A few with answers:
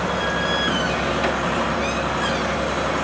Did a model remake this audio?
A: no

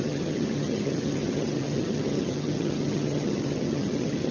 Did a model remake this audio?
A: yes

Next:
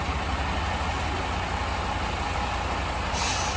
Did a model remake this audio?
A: no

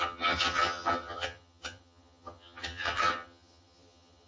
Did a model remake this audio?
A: yes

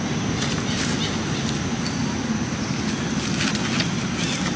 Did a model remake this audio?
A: no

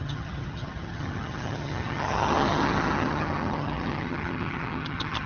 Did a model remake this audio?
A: yes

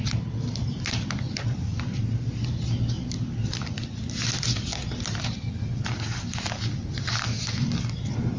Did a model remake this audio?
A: no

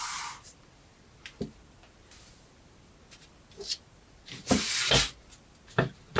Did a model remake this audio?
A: no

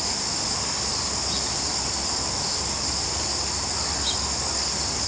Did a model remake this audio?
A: no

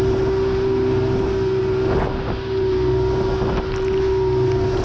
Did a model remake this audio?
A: no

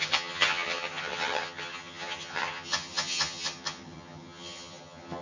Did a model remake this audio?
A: yes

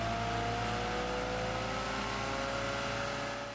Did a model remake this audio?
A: no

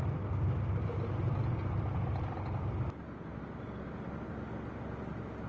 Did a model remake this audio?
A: no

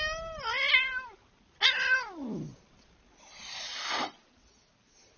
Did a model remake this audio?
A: no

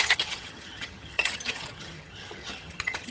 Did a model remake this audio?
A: yes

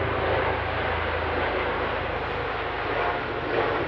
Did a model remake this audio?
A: no